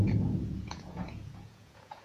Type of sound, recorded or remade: remade